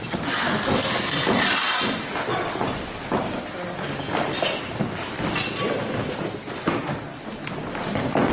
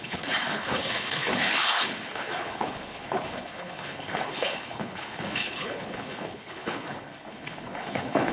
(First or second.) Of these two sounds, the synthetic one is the second